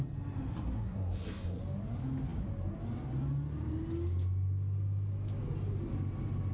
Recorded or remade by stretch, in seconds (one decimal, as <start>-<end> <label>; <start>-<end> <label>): 0.0-0.5 recorded; 0.5-1.6 remade; 1.6-6.5 recorded